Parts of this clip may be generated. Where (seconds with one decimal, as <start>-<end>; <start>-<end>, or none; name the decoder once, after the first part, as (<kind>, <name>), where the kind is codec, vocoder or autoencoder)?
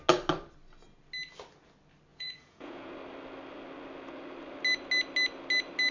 2.1-2.9 (vocoder, Vocos)